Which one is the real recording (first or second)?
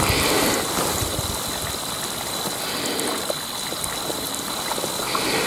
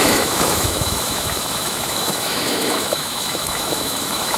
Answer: first